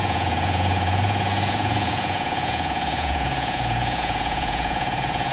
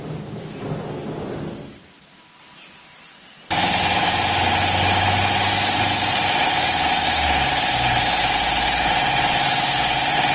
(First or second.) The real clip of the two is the second